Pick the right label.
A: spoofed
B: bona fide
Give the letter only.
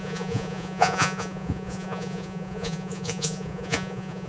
A